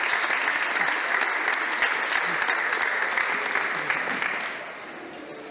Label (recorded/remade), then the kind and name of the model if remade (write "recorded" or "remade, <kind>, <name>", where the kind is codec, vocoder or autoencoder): recorded